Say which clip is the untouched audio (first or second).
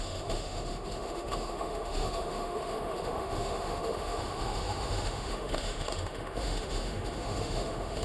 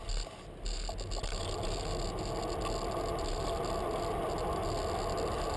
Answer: second